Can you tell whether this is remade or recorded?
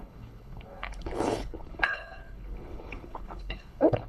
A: remade